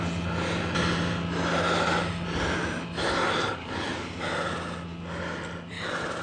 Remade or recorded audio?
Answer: recorded